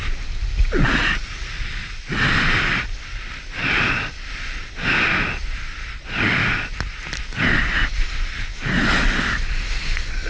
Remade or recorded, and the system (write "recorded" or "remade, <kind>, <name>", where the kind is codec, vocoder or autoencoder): recorded